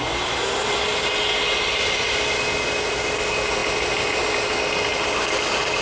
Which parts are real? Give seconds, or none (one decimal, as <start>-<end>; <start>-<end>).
0.0-5.8